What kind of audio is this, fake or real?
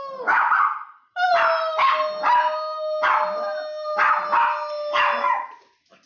real